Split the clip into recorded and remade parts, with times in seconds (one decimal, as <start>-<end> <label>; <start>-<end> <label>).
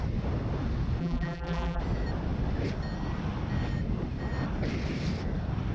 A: 0.0-1.0 recorded; 1.0-1.8 remade; 1.8-5.7 recorded